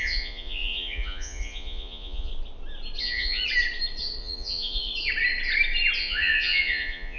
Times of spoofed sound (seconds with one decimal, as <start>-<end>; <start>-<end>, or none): 0.0-2.3; 3.0-3.4; 4.2-4.9; 6.0-7.2